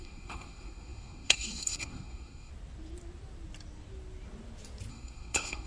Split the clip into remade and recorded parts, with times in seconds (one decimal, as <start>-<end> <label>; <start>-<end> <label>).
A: 0.0-2.5 remade; 2.5-4.9 recorded; 4.9-5.7 remade